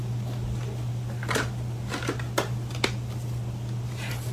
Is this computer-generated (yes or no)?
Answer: no